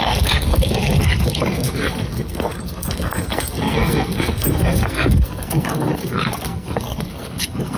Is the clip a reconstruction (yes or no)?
yes